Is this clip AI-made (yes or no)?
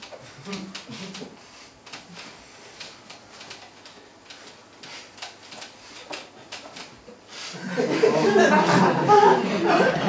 no